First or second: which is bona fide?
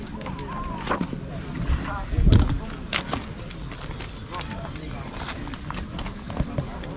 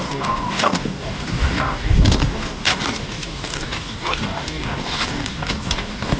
first